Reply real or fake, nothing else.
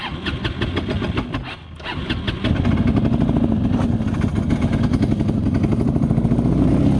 real